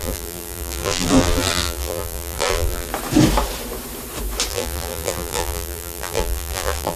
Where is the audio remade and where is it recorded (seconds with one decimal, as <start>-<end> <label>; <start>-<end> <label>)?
0.0-2.9 remade; 2.9-4.5 recorded; 4.5-7.0 remade